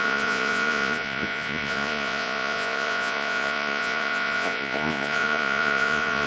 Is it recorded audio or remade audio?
remade